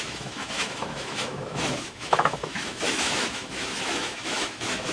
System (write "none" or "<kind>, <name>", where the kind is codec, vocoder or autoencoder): autoencoder, DAC-VAE